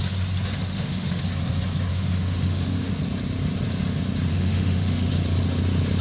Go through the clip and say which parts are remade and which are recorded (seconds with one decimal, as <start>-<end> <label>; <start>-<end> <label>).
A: 0.0-0.6 recorded; 0.6-1.2 remade; 1.2-1.9 recorded; 1.9-2.9 remade; 2.9-4.3 recorded; 4.3-5.1 remade; 5.1-6.0 recorded